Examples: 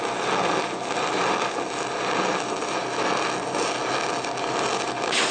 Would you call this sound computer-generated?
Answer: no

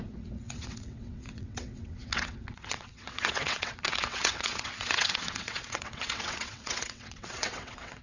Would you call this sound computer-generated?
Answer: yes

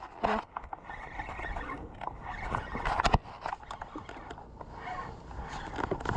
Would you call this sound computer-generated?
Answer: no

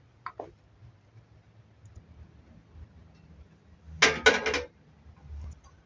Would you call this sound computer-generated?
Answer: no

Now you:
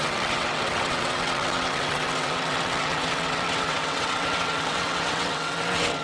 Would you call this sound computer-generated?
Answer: yes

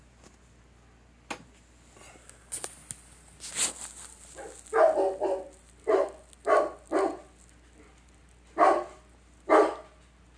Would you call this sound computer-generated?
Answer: no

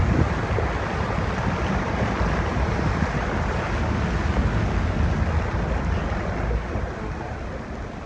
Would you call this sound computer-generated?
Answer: no